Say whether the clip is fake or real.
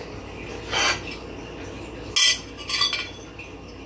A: real